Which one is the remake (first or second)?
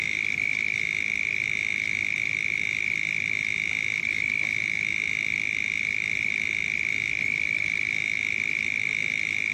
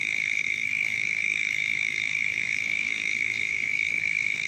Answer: second